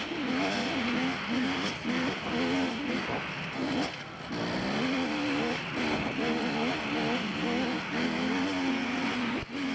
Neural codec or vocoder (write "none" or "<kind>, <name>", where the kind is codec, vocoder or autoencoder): none